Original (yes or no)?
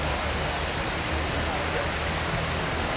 yes